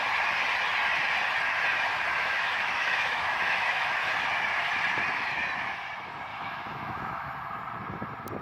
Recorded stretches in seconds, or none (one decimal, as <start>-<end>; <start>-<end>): 0.0-2.2; 4.1-6.3; 7.3-8.4